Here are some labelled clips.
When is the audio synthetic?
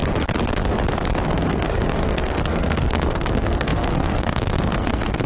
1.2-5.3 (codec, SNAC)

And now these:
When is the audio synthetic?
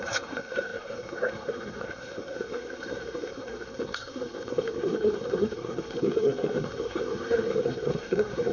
0.0-8.5 (codec, SNAC)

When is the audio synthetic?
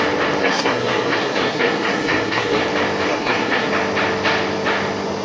0.4-2.6 (codec, SNAC); 3.1-3.7